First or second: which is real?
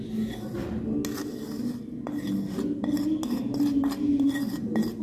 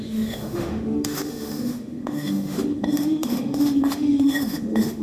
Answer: first